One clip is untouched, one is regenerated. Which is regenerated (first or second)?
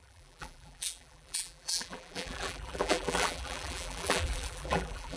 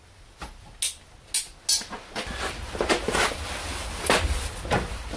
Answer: first